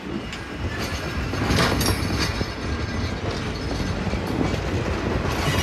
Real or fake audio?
real